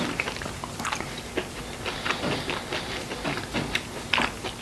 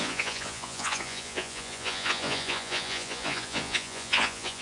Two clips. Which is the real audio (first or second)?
first